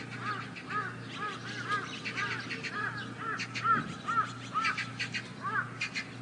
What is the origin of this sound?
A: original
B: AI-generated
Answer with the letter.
A